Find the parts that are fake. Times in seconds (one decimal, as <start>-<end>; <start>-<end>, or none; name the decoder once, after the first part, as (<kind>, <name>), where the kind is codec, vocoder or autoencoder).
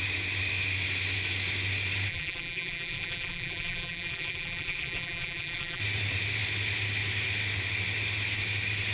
2.1-5.8 (vocoder, BigVGAN v2)